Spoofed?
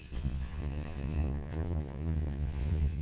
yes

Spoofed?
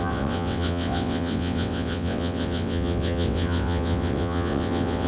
yes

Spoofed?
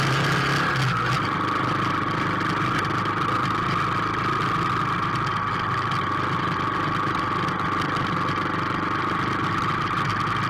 no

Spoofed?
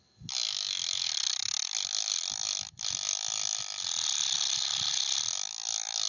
no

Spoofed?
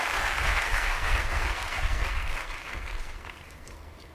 yes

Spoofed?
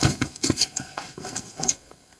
yes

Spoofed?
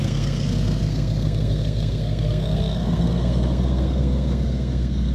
yes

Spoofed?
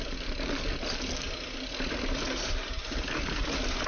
no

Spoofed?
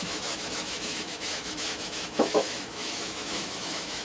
yes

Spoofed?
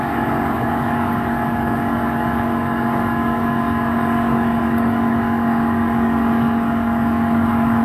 yes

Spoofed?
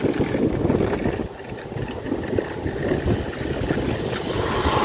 yes